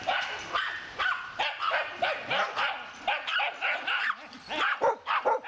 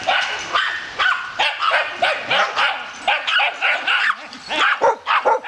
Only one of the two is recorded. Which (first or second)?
second